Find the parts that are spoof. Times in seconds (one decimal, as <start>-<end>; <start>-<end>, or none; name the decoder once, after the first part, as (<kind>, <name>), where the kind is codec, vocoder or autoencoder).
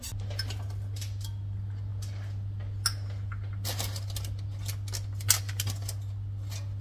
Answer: none